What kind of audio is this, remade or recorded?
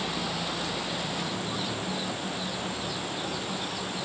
recorded